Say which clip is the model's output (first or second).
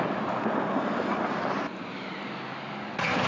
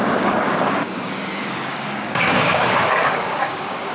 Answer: second